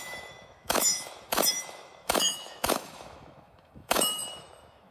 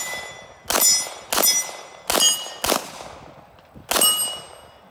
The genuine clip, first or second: second